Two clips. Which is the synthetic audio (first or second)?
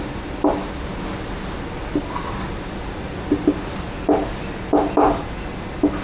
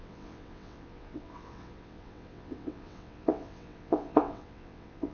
second